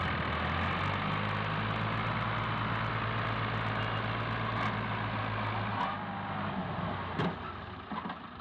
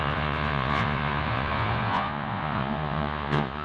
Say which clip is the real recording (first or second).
first